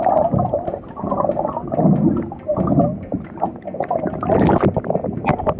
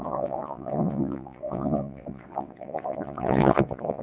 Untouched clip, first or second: first